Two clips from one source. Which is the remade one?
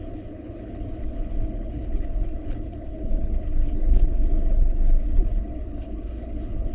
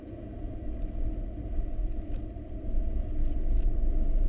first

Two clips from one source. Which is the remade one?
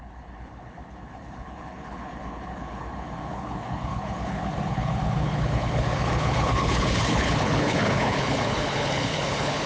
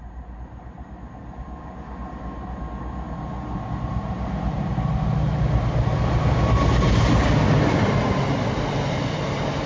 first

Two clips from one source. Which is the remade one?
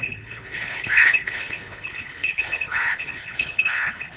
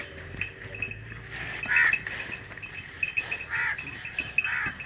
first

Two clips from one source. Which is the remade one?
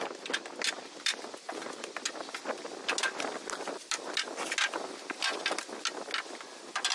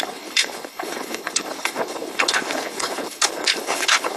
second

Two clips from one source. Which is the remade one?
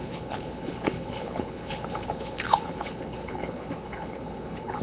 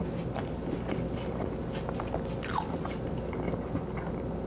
first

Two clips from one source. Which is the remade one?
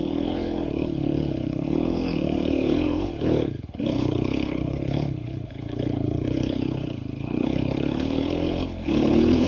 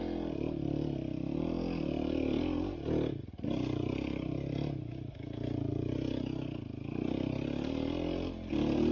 first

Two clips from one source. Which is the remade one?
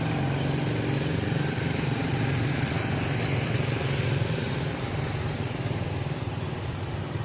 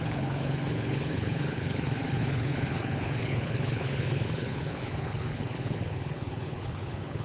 second